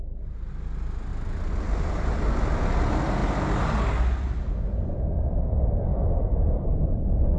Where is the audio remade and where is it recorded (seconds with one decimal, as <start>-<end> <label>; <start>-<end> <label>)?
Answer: 0.0-5.9 recorded; 5.9-6.6 remade; 6.6-7.4 recorded